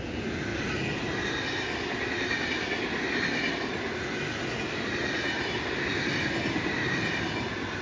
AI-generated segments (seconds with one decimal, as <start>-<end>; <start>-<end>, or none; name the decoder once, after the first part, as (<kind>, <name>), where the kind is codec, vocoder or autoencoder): none